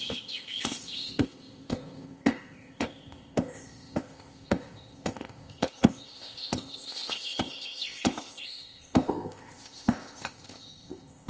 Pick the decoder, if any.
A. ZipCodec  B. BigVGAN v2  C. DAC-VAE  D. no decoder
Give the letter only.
A